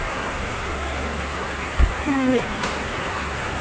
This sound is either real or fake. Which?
fake